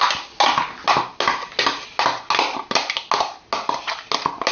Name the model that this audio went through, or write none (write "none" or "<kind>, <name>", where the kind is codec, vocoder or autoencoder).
none